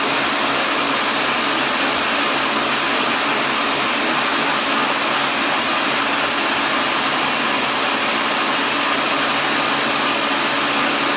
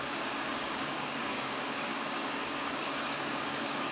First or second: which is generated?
second